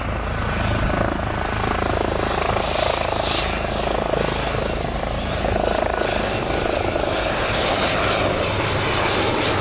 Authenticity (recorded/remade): recorded